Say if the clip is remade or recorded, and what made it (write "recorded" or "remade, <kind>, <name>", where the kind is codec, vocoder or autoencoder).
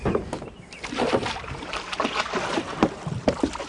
recorded